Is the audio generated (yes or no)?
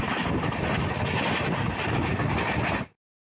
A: no